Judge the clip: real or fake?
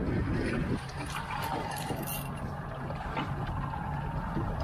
real